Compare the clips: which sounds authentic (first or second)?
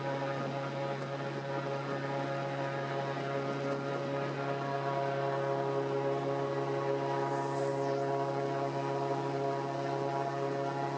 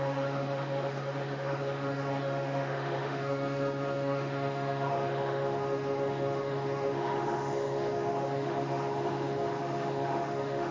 first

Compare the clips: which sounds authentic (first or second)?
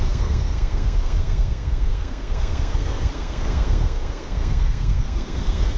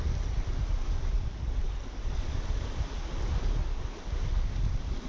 second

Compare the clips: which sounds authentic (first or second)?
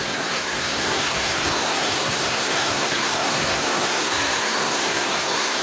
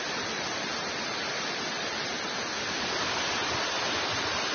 second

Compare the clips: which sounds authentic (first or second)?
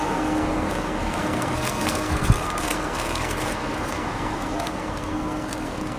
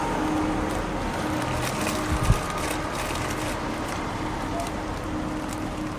second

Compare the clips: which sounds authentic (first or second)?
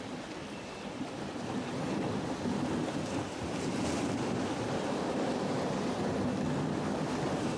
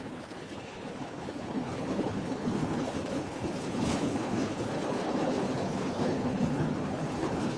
first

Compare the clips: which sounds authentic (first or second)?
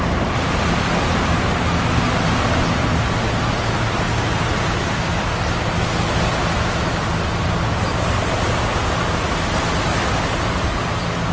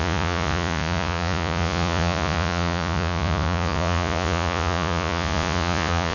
first